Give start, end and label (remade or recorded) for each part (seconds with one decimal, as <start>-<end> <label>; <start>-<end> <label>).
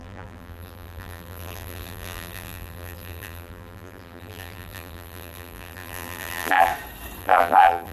0.0-6.7 remade; 6.7-7.2 recorded; 7.2-7.9 remade